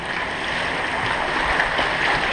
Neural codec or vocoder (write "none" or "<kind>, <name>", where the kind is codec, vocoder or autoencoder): none